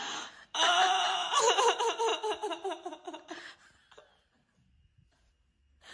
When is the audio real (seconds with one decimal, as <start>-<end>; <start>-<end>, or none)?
0.0-5.9